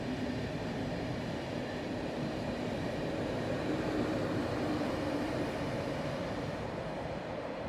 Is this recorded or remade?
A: remade